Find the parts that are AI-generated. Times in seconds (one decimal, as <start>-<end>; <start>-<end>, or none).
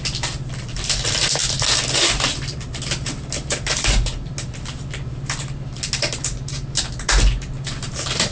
none